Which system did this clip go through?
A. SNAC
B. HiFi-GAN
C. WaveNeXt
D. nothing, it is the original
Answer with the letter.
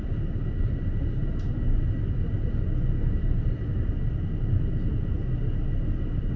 D